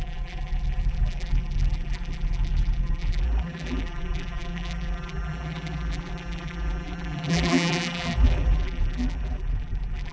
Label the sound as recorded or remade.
remade